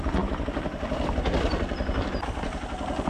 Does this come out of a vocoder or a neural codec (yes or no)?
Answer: no